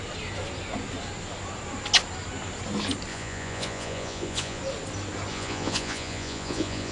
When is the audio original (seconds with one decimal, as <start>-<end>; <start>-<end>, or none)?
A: 0.0-3.1; 4.6-5.3